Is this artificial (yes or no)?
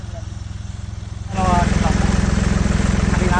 no